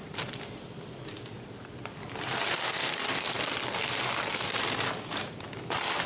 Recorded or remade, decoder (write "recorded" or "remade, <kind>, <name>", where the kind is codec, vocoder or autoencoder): recorded